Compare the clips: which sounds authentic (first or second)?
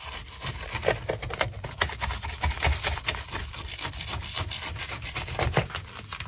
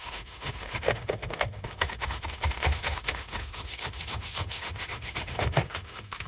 first